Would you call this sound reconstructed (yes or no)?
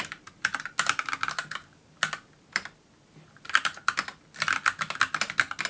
no